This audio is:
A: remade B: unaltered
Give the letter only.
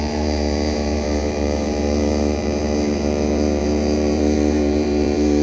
A